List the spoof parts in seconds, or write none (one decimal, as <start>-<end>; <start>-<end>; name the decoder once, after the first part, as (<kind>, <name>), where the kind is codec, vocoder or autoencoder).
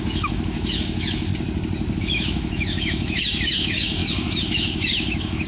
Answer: 0.0-1.3 (autoencoder, DAC-VAE); 2.0-5.5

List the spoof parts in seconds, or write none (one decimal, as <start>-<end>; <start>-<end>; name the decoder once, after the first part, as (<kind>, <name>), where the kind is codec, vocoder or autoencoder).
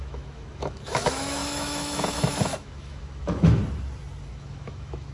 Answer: 0.0-3.6 (autoencoder, DAC-VAE); 4.2-5.1